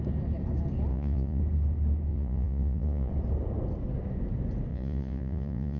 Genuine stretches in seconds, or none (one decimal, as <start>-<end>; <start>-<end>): 0.0-0.9; 1.4-2.1; 3.1-4.7